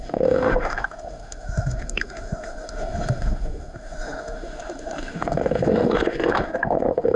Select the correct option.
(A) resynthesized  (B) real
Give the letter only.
A